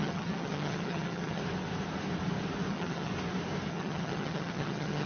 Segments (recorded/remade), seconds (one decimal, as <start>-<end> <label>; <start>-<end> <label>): 0.0-1.4 remade; 1.4-2.7 recorded; 2.7-3.1 remade; 3.1-3.7 recorded; 3.7-5.1 remade